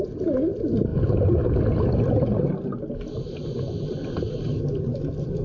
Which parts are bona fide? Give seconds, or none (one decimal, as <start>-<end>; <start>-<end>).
0.0-5.4